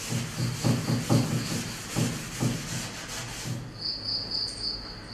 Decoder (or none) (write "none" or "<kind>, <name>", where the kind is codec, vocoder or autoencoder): none